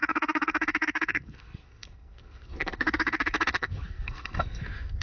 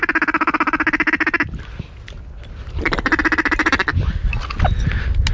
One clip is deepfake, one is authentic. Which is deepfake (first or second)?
first